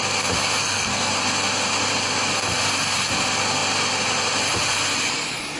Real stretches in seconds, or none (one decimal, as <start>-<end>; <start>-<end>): 0.0-0.6; 1.1-5.6